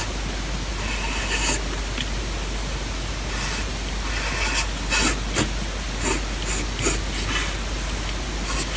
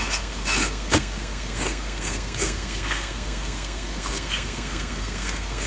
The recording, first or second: first